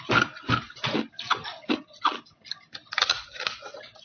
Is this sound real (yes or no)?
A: yes